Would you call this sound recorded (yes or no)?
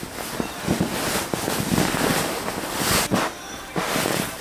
yes